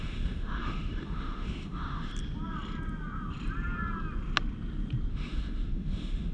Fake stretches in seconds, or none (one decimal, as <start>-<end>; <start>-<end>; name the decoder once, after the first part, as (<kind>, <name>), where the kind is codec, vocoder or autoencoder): 0.0-2.1 (autoencoder, DAC-VAE); 5.1-6.3